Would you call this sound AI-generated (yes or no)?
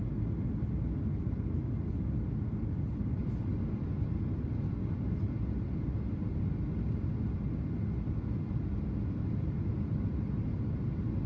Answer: no